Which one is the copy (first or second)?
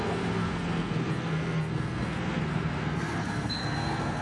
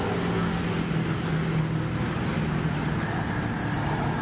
first